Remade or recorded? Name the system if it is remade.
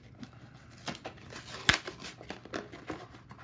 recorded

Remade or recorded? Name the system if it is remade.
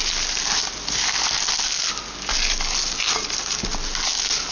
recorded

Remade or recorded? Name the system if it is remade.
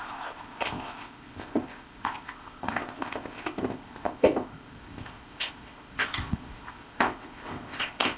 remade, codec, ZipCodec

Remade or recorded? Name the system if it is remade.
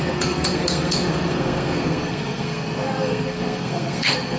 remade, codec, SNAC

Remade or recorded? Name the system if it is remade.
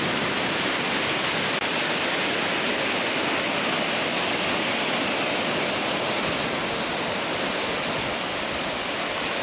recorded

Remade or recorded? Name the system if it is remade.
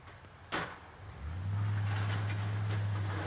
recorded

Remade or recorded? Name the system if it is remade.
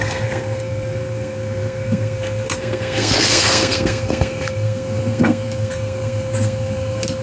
remade, codec, SNAC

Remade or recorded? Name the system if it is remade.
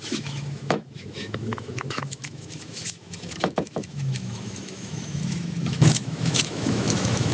remade, autoencoder, DAC-VAE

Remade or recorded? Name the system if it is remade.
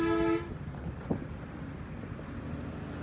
recorded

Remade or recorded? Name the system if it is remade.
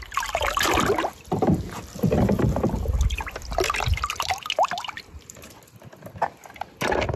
recorded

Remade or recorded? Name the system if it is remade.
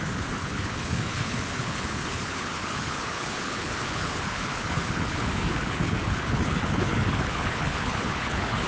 remade, codec, HILCodec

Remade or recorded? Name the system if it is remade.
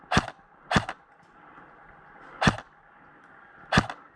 recorded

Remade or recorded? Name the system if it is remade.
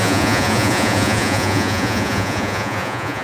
remade, vocoder, Vocos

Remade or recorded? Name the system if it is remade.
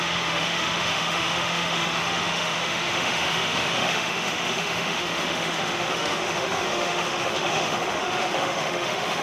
remade, autoencoder, DAC-VAE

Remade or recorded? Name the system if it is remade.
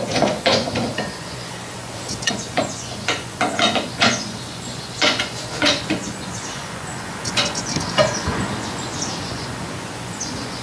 remade, vocoder, Vocos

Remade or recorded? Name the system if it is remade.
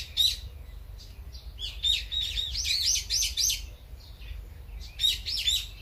recorded